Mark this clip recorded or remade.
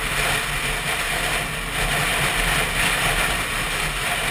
recorded